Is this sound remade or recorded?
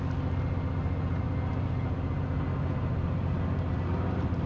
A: recorded